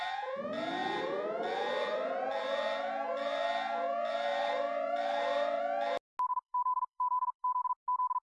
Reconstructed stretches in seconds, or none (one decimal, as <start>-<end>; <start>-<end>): 4.3-5.6; 6.3-7.6